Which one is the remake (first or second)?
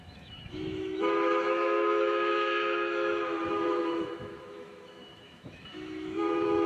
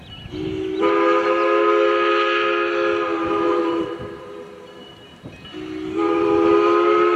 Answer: first